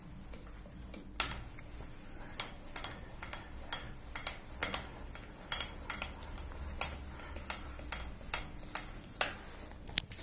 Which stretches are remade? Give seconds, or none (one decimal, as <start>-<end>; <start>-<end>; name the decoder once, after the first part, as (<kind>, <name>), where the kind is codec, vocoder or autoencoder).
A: none